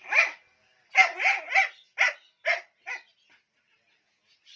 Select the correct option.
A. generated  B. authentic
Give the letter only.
B